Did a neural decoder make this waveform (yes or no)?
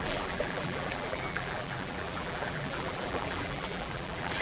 yes